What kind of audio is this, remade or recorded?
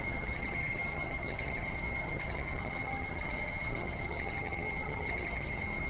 remade